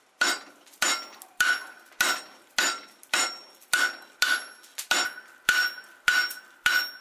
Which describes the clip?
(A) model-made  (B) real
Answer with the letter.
B